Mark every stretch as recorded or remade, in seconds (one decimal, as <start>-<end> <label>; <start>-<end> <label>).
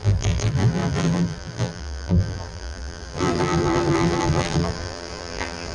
0.0-5.7 remade